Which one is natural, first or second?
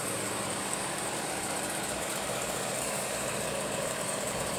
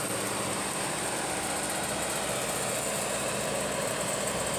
second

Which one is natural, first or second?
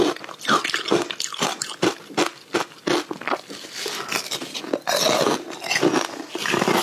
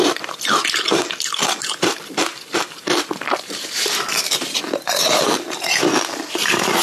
first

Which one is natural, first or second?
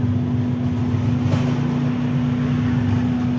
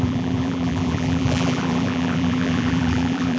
first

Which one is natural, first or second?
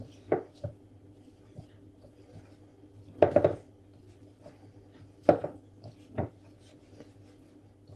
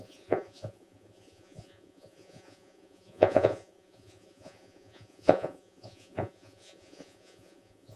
first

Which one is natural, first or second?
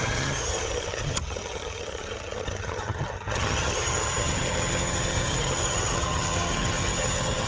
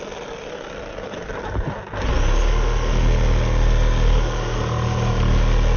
second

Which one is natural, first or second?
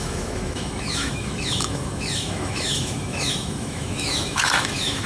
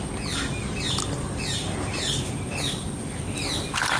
second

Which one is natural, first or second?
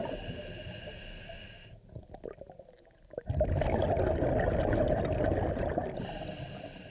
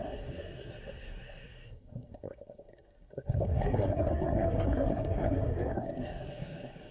first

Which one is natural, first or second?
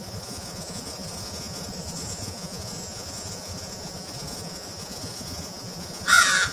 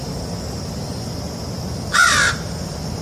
second